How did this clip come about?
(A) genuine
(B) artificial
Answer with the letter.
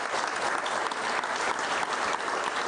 A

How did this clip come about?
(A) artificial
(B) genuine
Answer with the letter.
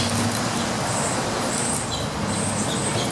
B